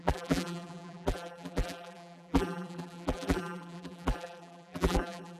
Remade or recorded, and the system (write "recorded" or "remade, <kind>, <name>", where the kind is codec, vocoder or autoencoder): remade, vocoder, BigVGAN v2